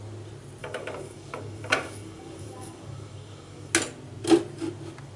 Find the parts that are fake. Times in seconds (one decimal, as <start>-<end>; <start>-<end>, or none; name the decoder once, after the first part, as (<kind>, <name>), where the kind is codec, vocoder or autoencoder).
0.6-3.7 (codec, DAC)